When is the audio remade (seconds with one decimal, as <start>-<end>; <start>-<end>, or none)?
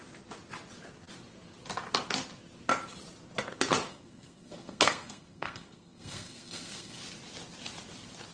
3.9-7.0